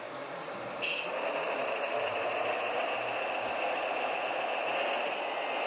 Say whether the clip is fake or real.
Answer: real